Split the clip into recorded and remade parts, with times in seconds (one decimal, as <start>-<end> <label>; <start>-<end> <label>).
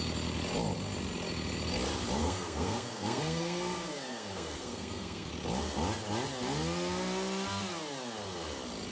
0.0-2.2 recorded; 2.2-5.3 remade; 5.3-8.9 recorded